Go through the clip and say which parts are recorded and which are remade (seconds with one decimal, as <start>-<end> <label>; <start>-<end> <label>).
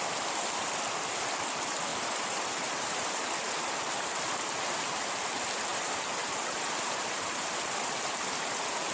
0.0-1.9 recorded; 1.9-3.8 remade; 3.8-5.7 recorded; 5.7-7.9 remade; 7.9-8.9 recorded